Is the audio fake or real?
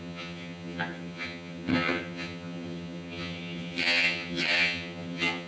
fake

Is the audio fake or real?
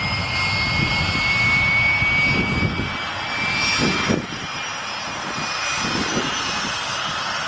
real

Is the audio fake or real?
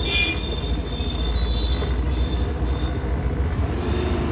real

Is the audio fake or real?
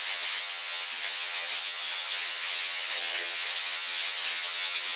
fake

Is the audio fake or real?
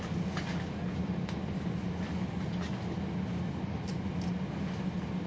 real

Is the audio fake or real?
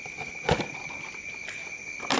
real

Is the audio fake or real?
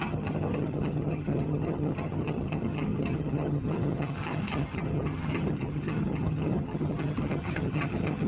fake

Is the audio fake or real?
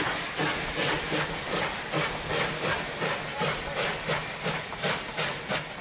real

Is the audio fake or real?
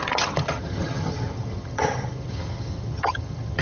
fake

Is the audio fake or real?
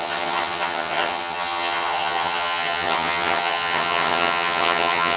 fake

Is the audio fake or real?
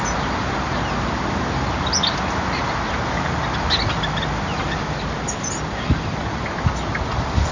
real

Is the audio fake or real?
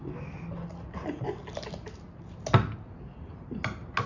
real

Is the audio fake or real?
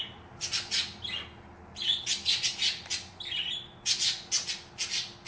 real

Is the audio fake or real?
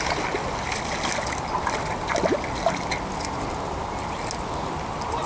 real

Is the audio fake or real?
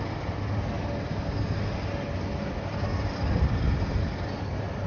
real